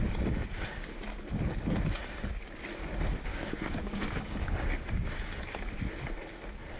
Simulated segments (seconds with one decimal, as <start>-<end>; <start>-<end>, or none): 3.3-5.2